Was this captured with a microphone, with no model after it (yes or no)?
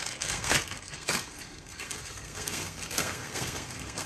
no